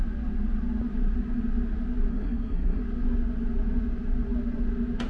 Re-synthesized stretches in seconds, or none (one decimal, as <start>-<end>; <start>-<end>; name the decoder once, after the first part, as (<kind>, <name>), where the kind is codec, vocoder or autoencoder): 2.1-2.8 (codec, SNAC)